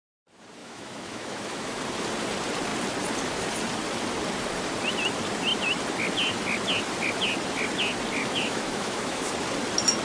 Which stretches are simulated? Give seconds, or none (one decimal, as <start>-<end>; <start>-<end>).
0.6-1.8; 8.2-9.3